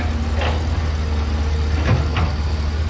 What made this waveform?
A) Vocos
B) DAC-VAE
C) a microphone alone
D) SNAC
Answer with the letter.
C